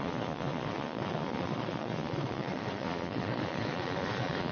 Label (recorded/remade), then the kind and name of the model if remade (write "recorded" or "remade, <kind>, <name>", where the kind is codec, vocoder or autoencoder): remade, vocoder, Vocos